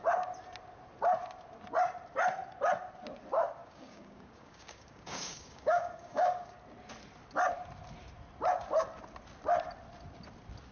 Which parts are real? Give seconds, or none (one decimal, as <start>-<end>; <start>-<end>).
0.0-3.6; 6.6-10.7

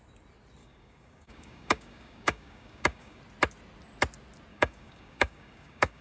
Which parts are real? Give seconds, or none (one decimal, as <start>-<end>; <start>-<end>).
0.0-0.6; 3.2-4.5